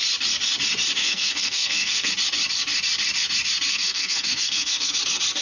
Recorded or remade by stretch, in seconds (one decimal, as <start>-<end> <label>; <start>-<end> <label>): 0.0-1.0 recorded; 1.0-2.1 remade; 2.1-3.7 recorded; 3.7-5.0 remade; 5.0-5.4 recorded